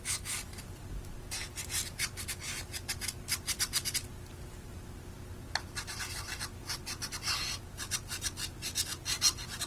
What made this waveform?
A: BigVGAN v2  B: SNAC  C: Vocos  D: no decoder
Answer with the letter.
D